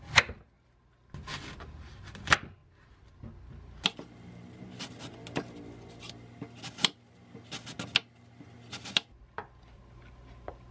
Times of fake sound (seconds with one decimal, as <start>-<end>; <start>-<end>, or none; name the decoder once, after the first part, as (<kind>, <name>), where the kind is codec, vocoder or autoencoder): none